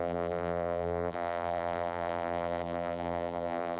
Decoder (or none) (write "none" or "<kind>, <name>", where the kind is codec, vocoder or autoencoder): vocoder, BigVGAN v2